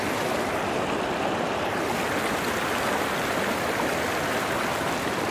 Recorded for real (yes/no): yes